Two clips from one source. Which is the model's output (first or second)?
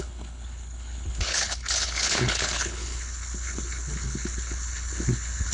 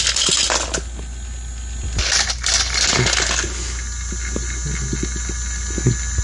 first